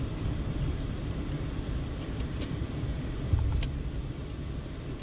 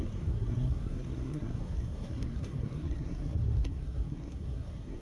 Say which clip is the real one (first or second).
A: first